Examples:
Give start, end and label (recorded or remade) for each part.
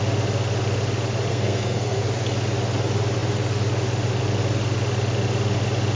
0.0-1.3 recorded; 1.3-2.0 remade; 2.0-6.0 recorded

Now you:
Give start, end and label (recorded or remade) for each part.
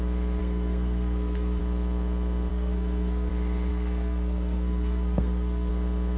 0.0-0.4 recorded; 0.4-1.6 remade; 1.6-2.5 recorded; 2.5-3.3 remade; 3.3-3.7 recorded; 3.7-5.7 remade; 5.7-6.2 recorded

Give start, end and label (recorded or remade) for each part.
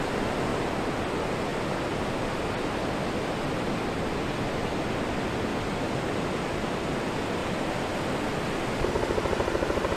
0.0-10.0 recorded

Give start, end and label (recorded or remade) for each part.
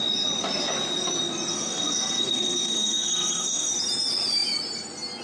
0.0-1.5 recorded; 1.5-3.7 remade; 3.7-5.2 recorded